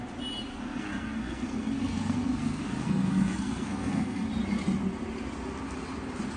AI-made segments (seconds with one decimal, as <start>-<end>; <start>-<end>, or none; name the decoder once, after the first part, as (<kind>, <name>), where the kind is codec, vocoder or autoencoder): 0.5-4.3 (codec, SNAC)